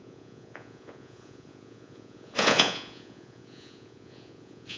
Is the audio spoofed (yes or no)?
yes